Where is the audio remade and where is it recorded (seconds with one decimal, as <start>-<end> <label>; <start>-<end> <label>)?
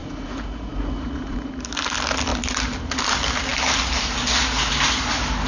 0.0-1.5 remade; 1.5-5.5 recorded